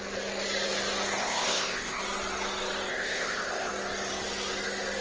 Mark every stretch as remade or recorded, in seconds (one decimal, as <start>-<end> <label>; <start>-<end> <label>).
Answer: 0.0-1.2 recorded; 1.2-2.0 remade; 2.0-2.9 recorded; 2.9-3.7 remade; 3.7-5.0 recorded